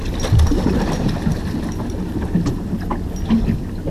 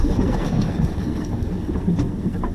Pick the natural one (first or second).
first